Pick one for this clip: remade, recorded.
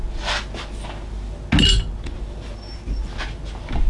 recorded